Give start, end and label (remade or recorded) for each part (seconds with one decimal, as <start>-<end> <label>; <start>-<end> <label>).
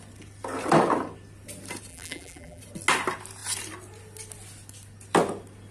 0.0-1.9 recorded; 1.9-2.6 remade; 2.6-5.7 recorded